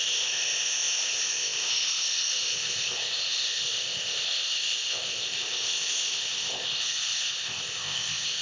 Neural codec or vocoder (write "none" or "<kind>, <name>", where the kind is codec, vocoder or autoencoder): codec, ZipCodec